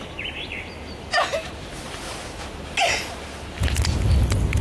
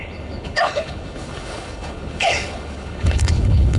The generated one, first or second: second